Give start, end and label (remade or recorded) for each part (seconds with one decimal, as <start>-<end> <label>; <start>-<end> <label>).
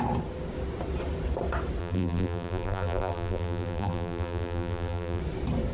0.0-1.8 recorded; 1.8-5.2 remade; 5.2-5.7 recorded